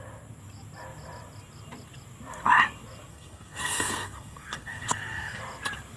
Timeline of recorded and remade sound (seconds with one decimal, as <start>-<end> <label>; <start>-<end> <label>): 0.0-3.1 recorded; 3.1-5.4 remade; 5.4-6.0 recorded